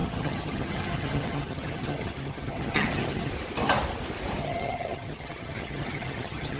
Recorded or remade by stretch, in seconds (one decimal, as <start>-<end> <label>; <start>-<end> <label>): 0.0-3.3 remade; 3.3-4.4 recorded; 4.4-6.6 remade

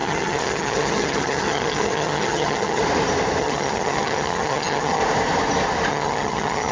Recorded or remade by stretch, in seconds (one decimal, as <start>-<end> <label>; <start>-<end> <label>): 0.0-2.8 remade; 2.8-3.4 recorded; 3.4-5.0 remade; 5.0-5.9 recorded; 5.9-6.7 remade

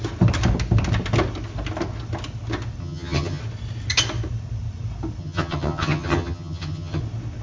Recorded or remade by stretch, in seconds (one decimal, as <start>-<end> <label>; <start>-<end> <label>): 0.0-2.8 recorded; 2.8-3.4 remade; 3.4-5.2 recorded; 5.2-7.0 remade; 7.0-7.4 recorded

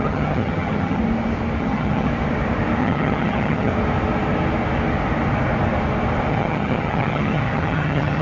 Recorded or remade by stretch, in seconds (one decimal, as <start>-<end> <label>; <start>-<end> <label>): 0.0-1.0 remade; 1.0-1.6 recorded; 1.6-2.1 remade; 2.1-2.8 recorded; 2.8-3.7 remade; 3.7-6.3 recorded; 6.3-8.2 remade

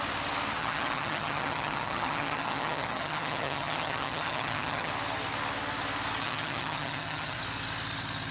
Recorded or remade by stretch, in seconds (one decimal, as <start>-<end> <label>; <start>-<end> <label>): 0.0-0.6 recorded; 0.6-4.9 remade; 4.9-6.2 recorded; 6.2-7.4 remade; 7.4-8.3 recorded

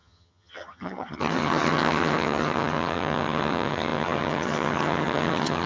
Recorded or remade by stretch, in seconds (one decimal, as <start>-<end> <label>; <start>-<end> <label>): 0.0-5.7 remade